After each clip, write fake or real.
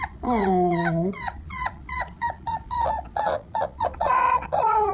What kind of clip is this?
fake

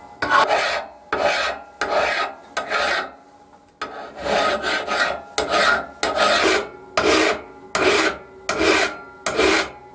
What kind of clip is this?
real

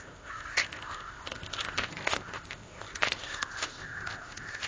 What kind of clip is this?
fake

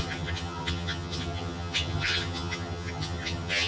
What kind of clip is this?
fake